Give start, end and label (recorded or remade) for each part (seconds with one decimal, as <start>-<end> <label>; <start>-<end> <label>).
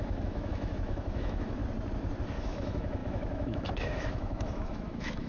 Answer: 0.0-1.6 remade; 1.6-2.4 recorded; 2.4-5.3 remade